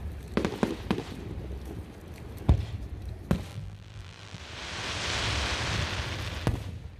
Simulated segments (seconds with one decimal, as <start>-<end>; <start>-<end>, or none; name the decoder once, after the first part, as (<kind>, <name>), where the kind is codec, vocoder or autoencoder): 3.5-4.4 (vocoder, BigVGAN v2)